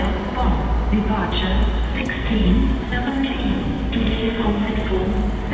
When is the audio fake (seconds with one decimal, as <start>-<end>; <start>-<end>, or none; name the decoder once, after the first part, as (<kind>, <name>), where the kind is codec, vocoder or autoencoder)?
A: 1.9-4.7 (codec, SNAC)